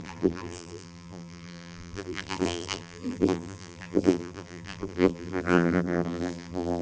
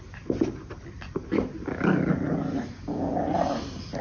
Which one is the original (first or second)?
second